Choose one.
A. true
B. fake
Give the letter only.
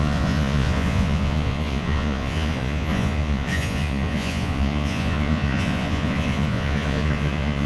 B